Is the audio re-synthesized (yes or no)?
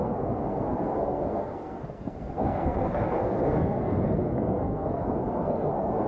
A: yes